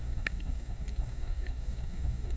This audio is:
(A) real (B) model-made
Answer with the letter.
B